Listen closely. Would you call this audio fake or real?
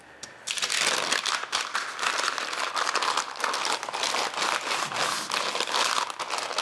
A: real